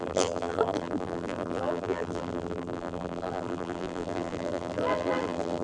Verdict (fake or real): fake